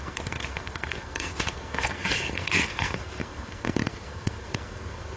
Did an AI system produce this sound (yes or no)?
yes